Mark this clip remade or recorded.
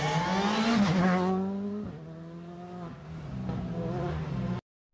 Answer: recorded